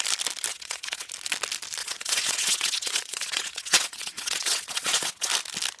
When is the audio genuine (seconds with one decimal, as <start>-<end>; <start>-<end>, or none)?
0.0-0.5; 1.1-1.8; 5.3-5.8